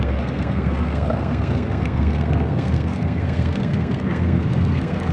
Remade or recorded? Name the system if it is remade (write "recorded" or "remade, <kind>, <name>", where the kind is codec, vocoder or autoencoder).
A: remade, codec, SNAC